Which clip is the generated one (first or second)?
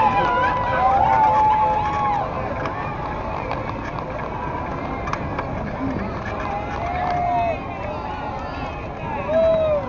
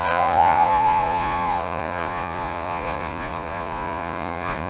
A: second